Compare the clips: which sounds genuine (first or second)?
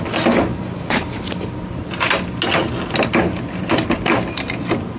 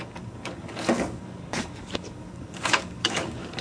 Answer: first